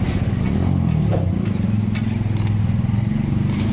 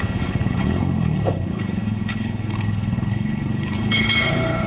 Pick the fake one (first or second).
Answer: second